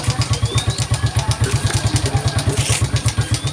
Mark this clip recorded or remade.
recorded